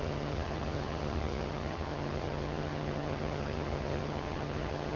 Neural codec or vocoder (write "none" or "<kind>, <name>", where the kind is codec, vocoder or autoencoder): vocoder, HiFi-GAN